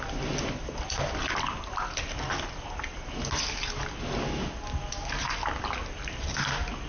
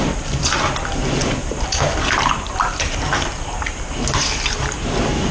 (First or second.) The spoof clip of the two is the second